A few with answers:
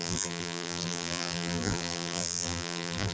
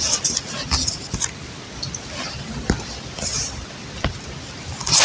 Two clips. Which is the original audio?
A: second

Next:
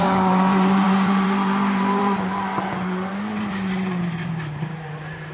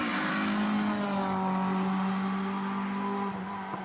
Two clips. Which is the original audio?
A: second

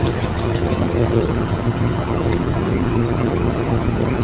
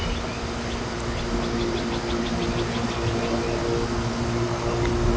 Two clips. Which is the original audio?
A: second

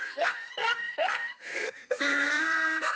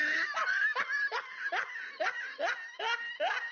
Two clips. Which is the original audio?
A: second